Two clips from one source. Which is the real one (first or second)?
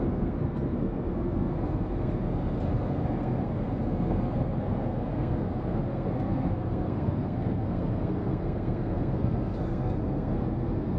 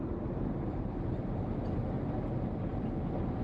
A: second